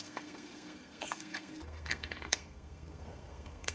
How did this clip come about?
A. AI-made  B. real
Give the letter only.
A